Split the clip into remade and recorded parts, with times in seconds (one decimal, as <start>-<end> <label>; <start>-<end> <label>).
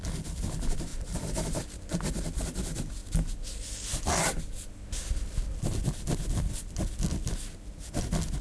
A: 0.0-0.9 recorded; 0.9-1.6 remade; 1.6-8.4 recorded